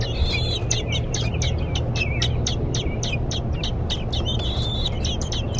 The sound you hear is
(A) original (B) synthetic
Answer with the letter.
A